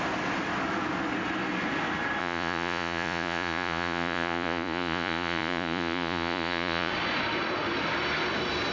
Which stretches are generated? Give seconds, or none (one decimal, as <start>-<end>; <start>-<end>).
2.2-6.9